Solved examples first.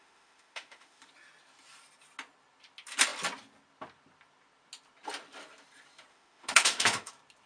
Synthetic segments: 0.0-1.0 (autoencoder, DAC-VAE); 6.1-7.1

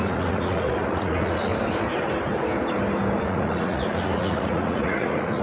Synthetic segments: 0.0-1.5 (vocoder, Vocos); 3.2-5.4

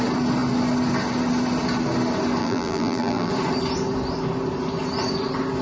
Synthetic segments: 2.4-3.3 (vocoder, BigVGAN v2)

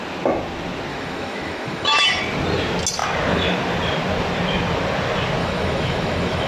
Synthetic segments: 0.9-2.2 (autoencoder, DAC-VAE); 5.4-6.5

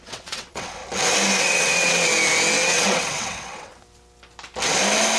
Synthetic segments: 0.0-0.8 (vocoder, WaveNeXt); 1.4-2.1; 2.7-3.7

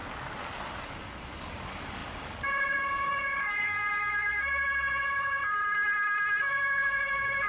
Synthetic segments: 0.8-5.4 (codec, DAC); 6.4-7.5